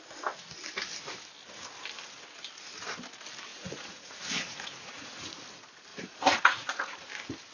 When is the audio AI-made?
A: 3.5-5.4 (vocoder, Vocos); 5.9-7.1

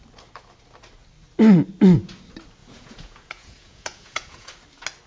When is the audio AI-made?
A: 2.6-4.5 (vocoder, Vocos)

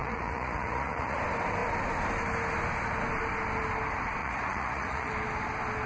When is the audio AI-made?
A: 0.0-1.2 (vocoder, Vocos); 4.2-5.1

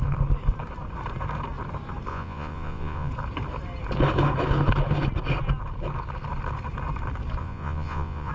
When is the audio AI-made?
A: 2.1-3.1 (vocoder, Vocos); 7.4-8.3